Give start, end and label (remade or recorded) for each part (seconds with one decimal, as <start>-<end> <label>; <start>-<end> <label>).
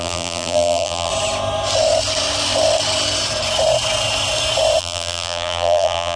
0.0-1.1 remade; 1.1-4.8 recorded; 4.8-6.2 remade